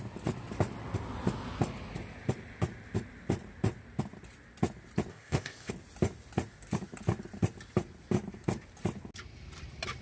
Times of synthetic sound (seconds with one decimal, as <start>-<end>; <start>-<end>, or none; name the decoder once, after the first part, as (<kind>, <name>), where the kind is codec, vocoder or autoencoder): 5.1-5.7 (codec, ZipCodec)